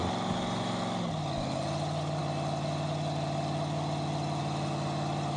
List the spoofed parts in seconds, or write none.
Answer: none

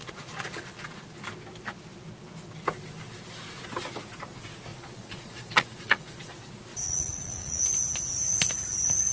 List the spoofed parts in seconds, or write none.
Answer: 0.0-1.2 (vocoder, Vocos); 4.7-6.3; 6.7-7.6